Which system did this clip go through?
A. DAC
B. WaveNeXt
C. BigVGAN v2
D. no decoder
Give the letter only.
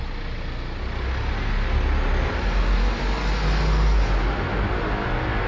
D